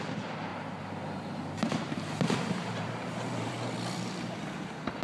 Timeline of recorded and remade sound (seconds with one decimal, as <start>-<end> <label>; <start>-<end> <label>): 0.0-0.5 recorded; 0.5-3.5 remade; 3.5-5.0 recorded